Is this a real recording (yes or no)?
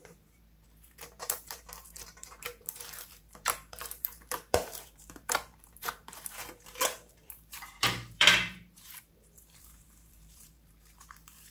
no